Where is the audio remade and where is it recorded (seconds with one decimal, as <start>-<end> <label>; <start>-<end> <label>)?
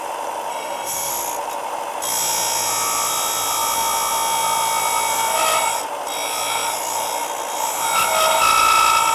0.0-0.5 recorded; 0.5-1.1 remade; 1.1-9.1 recorded